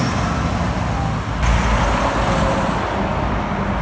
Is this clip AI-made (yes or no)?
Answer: no